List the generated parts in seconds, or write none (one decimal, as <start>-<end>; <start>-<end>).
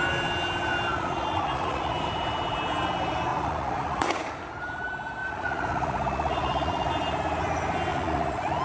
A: 0.9-1.9; 3.3-4.3; 5.2-6.9; 7.9-8.6